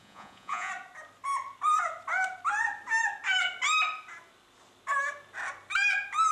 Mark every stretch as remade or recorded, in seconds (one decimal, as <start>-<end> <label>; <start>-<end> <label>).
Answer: 0.0-0.7 remade; 0.7-6.3 recorded